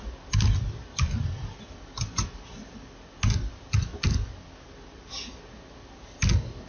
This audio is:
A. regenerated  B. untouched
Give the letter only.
B